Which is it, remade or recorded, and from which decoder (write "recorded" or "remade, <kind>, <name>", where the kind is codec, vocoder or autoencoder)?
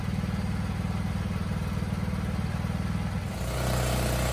recorded